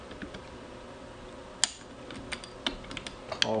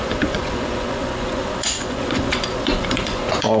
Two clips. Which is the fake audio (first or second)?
second